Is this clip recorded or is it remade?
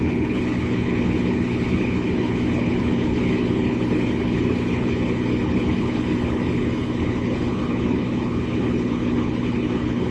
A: remade